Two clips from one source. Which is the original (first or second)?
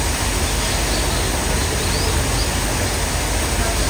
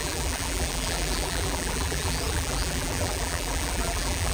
first